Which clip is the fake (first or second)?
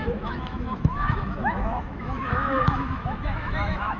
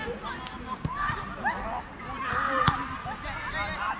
first